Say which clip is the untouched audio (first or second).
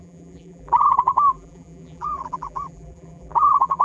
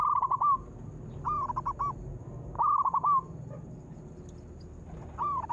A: second